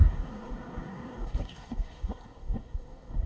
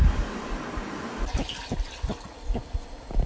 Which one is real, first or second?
second